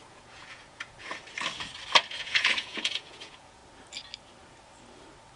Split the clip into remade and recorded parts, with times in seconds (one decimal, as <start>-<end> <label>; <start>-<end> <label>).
0.0-1.1 remade; 1.1-2.1 recorded; 2.1-3.6 remade; 3.6-5.4 recorded